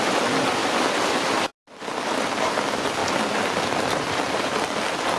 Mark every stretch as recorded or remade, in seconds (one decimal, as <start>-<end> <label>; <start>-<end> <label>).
0.0-5.2 recorded